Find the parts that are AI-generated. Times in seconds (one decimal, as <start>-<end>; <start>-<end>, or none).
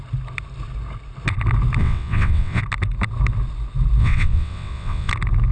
1.8-2.6; 4.0-5.1